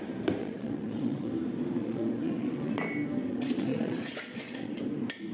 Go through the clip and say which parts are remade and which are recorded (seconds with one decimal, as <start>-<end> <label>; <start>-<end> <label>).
0.0-0.4 recorded; 0.4-1.3 remade; 1.3-1.8 recorded; 1.8-2.8 remade; 2.8-3.3 recorded; 3.3-4.8 remade; 4.8-5.3 recorded